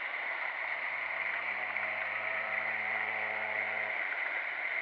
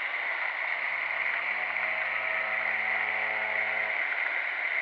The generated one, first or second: first